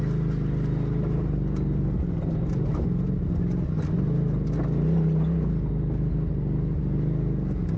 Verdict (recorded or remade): recorded